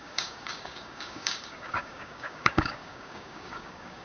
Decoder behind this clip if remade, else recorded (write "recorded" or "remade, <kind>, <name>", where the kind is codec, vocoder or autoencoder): remade, codec, DAC